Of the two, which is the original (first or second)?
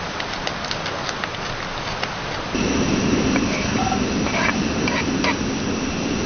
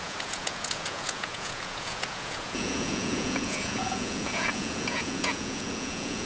first